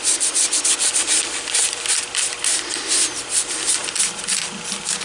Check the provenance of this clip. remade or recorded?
recorded